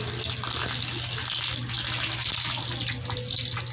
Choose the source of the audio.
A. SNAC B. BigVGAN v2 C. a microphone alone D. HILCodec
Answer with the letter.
C